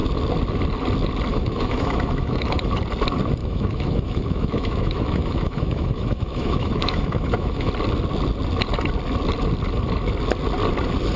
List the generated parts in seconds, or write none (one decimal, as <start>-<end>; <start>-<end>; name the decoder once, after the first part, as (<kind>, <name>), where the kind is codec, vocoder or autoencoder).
1.3-2.7 (autoencoder, DAC-VAE); 3.4-7.7